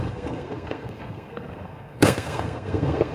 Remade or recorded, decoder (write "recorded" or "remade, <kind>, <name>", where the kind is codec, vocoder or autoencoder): remade, codec, SNAC